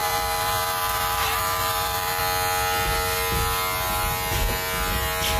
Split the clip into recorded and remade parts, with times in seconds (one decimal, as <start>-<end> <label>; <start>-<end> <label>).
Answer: 0.0-2.2 remade; 2.2-5.4 recorded